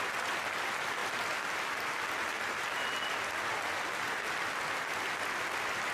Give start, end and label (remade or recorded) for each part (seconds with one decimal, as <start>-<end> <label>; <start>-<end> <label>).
0.0-5.9 recorded